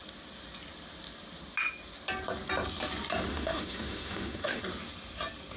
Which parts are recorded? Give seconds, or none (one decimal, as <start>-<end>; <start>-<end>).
0.0-3.3; 4.6-5.6